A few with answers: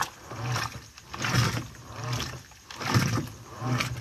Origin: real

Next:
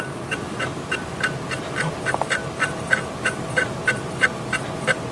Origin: fake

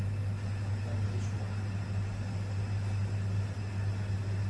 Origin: real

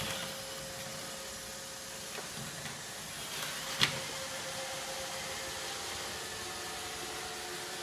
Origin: real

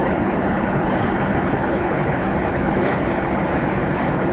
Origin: fake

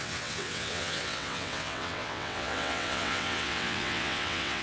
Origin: fake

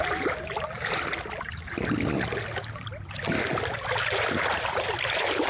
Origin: real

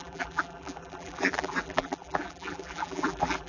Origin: fake